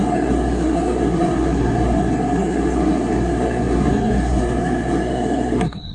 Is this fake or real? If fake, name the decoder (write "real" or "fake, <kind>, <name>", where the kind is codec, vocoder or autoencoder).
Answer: fake, codec, SNAC